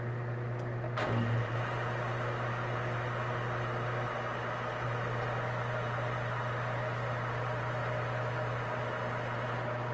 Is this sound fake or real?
real